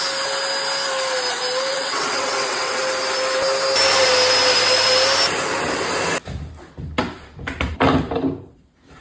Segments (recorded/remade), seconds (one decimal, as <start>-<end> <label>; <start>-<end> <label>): 0.0-1.7 recorded; 1.7-2.8 remade; 2.8-9.0 recorded